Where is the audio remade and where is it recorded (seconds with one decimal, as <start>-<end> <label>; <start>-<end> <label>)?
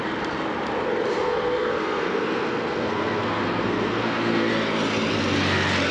0.0-1.2 recorded; 1.2-4.5 remade; 4.5-5.9 recorded